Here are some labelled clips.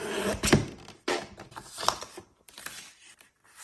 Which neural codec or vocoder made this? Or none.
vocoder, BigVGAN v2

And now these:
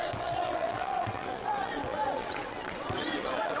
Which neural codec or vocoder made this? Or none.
vocoder, WaveNeXt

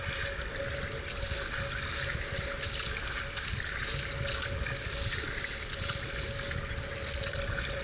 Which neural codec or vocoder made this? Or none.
none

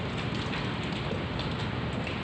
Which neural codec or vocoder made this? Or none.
none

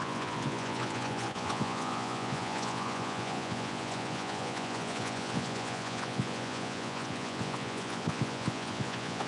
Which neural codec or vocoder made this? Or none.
vocoder, Vocos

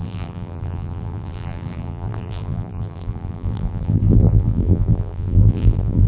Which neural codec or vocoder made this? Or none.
vocoder, BigVGAN v2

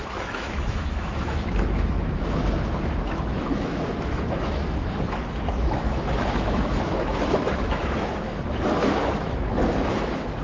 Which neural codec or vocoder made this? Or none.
autoencoder, DAC-VAE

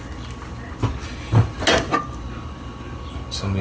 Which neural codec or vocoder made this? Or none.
none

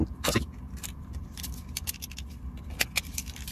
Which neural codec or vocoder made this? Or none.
none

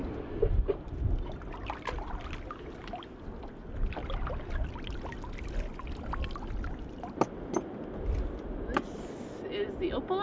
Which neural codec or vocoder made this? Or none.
none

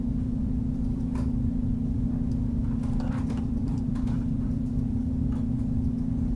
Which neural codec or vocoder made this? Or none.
vocoder, BigVGAN v2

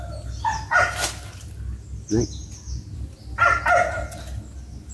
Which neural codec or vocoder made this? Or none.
none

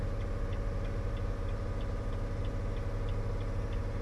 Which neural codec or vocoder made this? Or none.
none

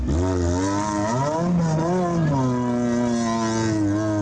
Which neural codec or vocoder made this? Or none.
none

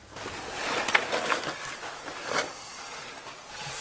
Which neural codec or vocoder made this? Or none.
none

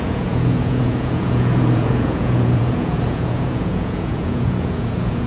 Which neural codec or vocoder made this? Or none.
vocoder, Vocos